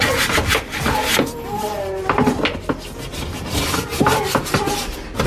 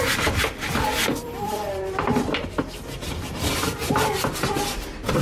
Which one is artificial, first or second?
second